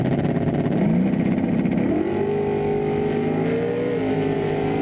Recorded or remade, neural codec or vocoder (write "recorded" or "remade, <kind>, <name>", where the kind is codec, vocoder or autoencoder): recorded